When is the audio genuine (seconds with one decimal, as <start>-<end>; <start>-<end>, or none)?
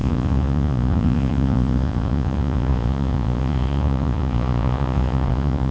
none